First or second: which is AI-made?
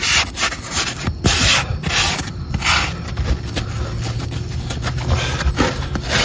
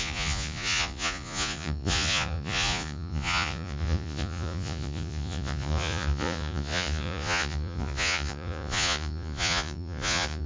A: second